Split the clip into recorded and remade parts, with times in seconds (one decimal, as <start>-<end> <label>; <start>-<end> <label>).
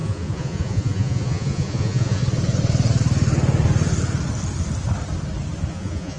0.0-2.2 remade; 2.2-5.7 recorded; 5.7-6.2 remade